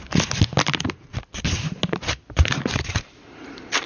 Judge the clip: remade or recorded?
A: recorded